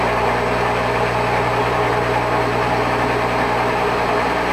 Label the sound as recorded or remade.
recorded